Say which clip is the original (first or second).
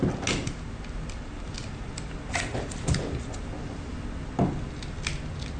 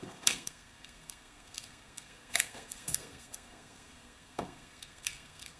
first